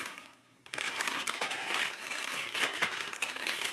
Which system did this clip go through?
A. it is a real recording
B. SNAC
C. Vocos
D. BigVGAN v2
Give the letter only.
B